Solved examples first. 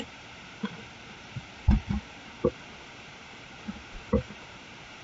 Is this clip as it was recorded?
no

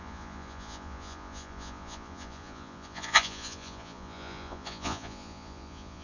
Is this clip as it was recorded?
no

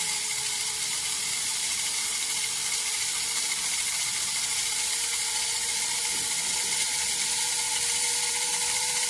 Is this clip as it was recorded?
no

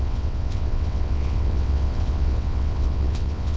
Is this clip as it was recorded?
no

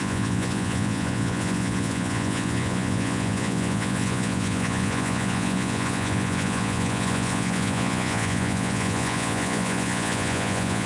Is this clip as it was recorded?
no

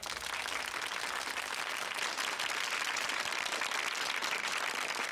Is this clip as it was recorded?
yes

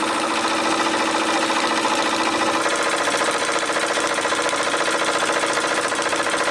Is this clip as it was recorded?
yes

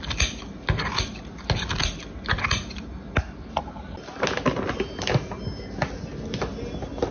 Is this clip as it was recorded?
yes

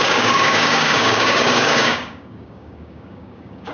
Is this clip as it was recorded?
no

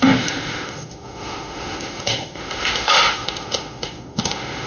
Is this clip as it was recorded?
no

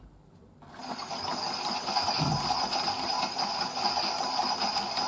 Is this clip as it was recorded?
yes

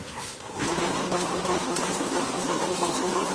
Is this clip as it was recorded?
no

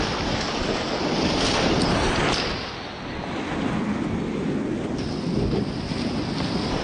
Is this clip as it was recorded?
yes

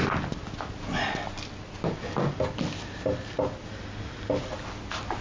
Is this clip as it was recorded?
yes